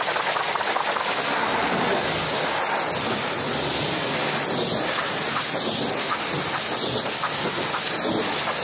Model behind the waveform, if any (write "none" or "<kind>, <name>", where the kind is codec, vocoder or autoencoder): none